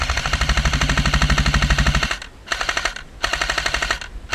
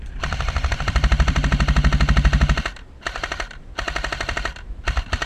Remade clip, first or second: second